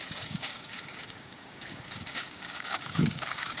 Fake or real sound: fake